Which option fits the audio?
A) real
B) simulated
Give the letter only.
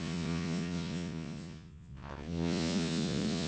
B